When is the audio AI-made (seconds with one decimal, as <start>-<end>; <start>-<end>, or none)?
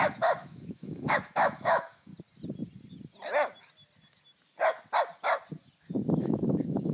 0.0-2.1; 6.2-6.9